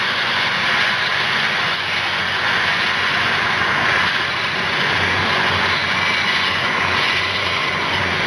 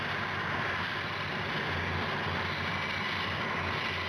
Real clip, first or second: second